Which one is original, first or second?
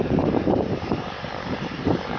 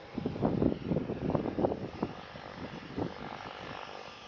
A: second